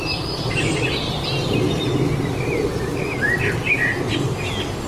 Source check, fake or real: real